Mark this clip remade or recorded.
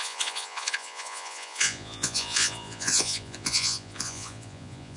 remade